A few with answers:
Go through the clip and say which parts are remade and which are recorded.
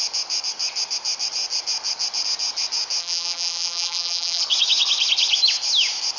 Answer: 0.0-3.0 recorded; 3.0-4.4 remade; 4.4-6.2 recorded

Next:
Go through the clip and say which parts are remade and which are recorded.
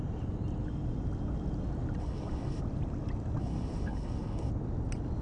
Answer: 0.0-2.0 recorded; 2.0-2.6 remade; 2.6-3.4 recorded; 3.4-4.5 remade; 4.5-5.2 recorded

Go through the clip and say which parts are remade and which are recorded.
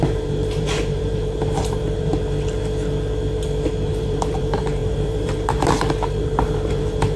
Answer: 0.0-2.1 remade; 2.1-3.9 recorded; 3.9-7.2 remade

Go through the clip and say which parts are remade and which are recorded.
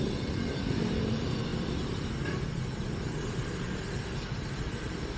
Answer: 0.0-1.5 remade; 1.5-3.3 recorded; 3.3-5.2 remade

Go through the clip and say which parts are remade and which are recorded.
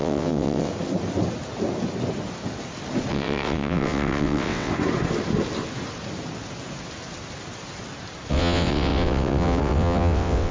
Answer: 0.0-0.7 remade; 0.7-3.1 recorded; 3.1-4.7 remade; 4.7-8.3 recorded; 8.3-10.5 remade